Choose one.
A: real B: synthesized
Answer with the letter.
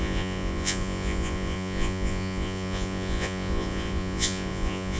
B